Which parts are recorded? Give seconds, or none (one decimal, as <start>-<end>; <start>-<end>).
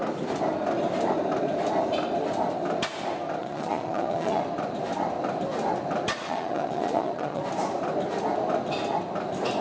0.0-3.4; 4.4-6.1; 7.4-9.6